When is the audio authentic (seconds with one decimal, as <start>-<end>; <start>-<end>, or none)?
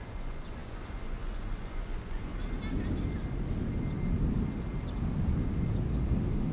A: 2.3-6.5